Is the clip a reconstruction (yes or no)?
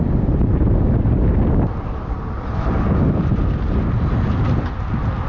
no